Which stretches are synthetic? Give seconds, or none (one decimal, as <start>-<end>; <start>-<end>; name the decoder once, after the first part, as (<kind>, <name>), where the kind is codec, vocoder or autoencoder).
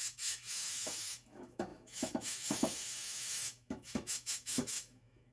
0.0-5.3 (autoencoder, DAC-VAE)